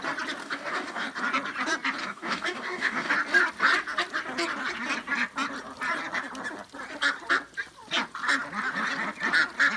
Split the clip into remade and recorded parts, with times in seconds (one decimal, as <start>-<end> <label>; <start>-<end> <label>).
0.0-0.4 recorded; 0.4-1.1 remade; 1.1-2.0 recorded; 2.0-3.1 remade; 3.1-9.8 recorded